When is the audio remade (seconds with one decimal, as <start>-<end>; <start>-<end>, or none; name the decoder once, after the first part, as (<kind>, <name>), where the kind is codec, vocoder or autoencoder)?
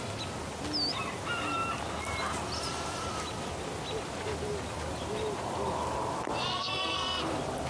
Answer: 6.5-7.2 (codec, SNAC)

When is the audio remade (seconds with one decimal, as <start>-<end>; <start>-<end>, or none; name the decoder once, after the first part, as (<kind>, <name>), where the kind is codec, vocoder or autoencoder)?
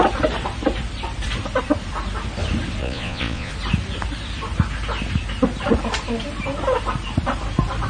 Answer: 2.8-3.5 (vocoder, Vocos)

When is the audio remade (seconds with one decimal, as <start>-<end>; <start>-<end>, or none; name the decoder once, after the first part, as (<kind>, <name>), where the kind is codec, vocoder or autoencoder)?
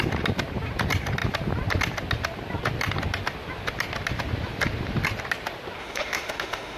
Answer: 5.8-6.8 (autoencoder, DAC-VAE)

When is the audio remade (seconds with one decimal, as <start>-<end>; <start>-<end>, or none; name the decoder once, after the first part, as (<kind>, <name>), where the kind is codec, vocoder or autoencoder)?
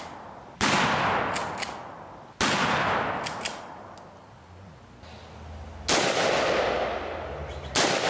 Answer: none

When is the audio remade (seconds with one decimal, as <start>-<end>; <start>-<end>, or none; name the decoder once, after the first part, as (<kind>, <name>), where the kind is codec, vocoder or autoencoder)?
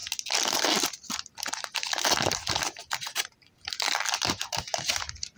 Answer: 2.8-3.7 (vocoder, BigVGAN v2)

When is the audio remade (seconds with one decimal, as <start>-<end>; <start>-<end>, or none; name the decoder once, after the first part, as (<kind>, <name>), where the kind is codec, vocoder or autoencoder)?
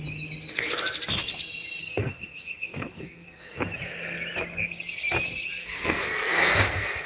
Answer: 1.8-3.6 (codec, SNAC); 5.6-7.1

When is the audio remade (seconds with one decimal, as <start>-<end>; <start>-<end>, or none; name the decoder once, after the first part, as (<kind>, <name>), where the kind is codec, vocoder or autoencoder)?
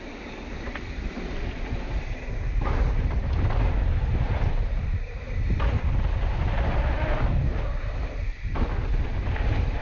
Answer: 4.1-5.1 (vocoder, BigVGAN v2)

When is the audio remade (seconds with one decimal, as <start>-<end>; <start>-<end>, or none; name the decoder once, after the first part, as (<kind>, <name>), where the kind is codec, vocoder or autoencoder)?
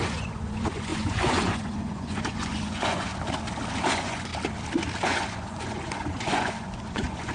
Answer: 0.0-3.1 (vocoder, Vocos); 3.8-4.3; 5.0-7.3